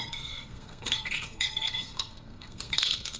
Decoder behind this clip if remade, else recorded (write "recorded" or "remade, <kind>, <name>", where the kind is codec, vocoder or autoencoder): remade, codec, SNAC